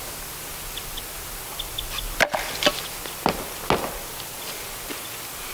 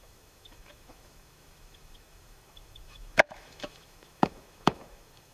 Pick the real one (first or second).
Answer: first